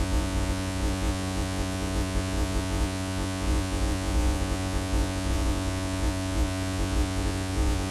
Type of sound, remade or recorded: remade